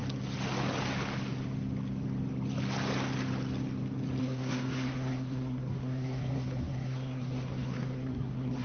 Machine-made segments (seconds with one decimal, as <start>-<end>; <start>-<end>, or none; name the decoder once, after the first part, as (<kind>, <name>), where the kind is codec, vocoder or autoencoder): 4.2-8.6 (codec, SNAC)